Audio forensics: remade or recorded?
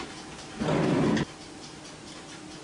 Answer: recorded